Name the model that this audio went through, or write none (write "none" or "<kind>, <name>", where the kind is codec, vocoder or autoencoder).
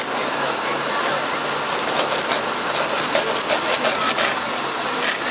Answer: none